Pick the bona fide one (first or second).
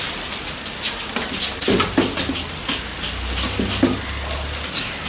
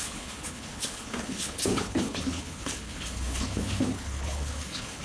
first